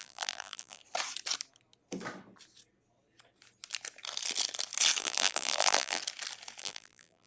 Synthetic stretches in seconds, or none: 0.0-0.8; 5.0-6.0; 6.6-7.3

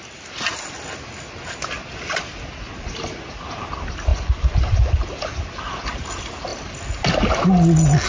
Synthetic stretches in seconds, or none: 4.1-5.2

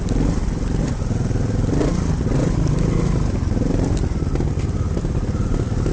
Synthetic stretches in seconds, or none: none

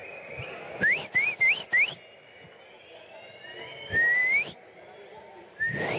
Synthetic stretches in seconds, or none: none

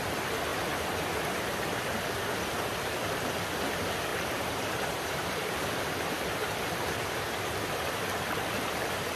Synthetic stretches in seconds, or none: 4.1-7.1